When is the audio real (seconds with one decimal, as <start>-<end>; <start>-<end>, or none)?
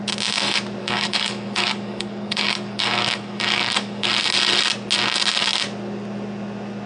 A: 0.0-0.8; 4.1-6.9